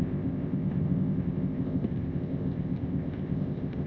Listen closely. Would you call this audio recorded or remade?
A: remade